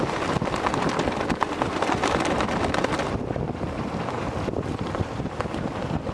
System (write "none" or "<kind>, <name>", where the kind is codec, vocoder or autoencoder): vocoder, BigVGAN v2